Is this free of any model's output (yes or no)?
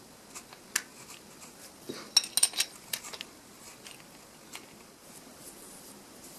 yes